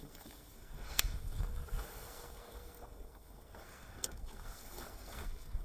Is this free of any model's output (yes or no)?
no